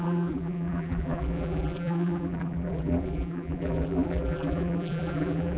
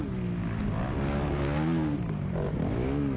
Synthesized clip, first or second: first